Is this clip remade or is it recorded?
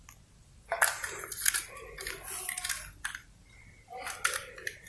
recorded